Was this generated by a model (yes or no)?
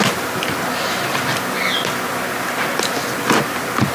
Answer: no